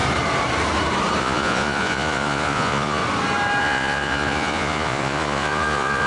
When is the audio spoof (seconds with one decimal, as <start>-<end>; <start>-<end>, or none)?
1.2-3.0; 3.6-6.1